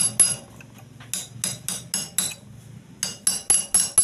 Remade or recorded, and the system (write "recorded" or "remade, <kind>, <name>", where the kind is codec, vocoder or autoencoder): recorded